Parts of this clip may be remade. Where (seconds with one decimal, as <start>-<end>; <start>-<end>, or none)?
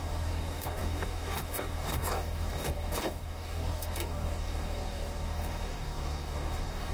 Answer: 0.0-6.9